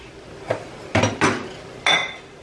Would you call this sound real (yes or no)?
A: yes